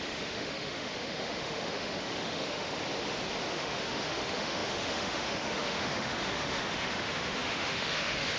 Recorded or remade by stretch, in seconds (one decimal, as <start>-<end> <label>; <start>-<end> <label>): 0.0-2.7 remade; 2.7-3.5 recorded; 3.5-8.4 remade